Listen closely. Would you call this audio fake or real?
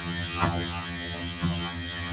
fake